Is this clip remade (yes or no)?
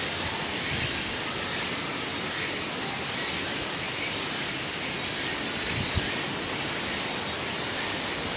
no